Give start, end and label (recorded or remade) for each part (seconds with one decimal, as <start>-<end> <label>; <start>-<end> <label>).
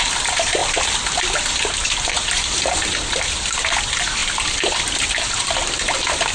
0.0-6.3 recorded